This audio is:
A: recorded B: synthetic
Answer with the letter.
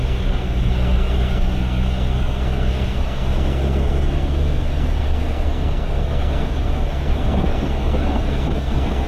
B